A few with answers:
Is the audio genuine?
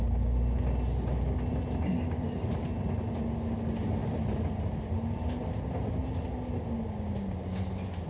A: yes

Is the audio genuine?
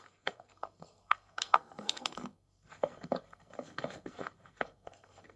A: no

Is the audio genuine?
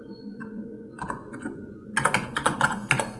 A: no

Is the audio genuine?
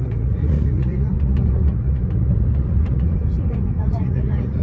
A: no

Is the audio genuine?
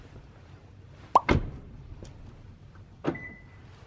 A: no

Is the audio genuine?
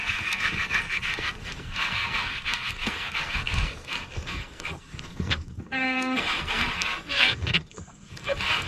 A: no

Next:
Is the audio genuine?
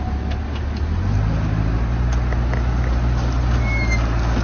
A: yes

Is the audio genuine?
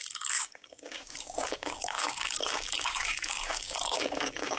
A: no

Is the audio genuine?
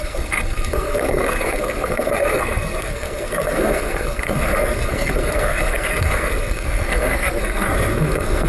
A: no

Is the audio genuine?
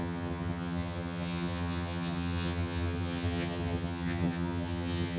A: no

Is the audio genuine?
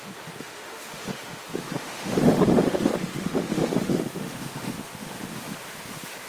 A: no